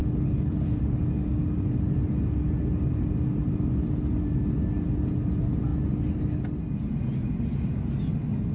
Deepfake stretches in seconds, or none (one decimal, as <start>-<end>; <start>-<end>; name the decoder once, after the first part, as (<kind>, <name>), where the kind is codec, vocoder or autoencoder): 0.0-0.8 (codec, HILCodec)